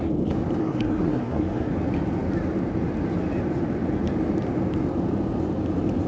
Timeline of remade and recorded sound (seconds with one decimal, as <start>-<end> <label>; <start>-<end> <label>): 0.0-0.6 recorded; 0.6-1.7 remade; 1.7-6.1 recorded